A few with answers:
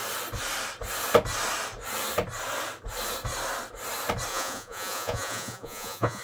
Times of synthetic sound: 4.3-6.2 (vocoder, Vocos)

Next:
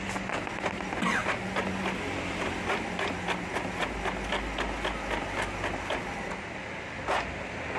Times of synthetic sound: none